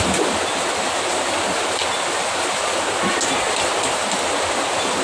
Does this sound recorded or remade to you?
recorded